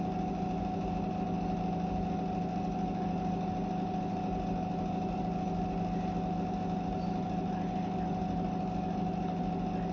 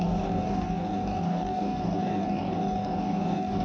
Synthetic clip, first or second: second